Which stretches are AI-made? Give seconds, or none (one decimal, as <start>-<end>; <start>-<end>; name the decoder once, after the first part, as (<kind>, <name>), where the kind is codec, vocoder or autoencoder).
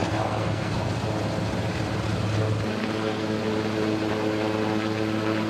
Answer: 0.0-0.9 (codec, SNAC); 2.8-3.4